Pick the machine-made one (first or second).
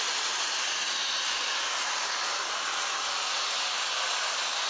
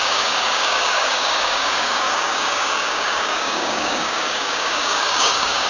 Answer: second